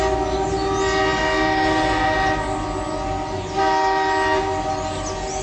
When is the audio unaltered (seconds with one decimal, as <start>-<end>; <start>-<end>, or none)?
0.0-5.4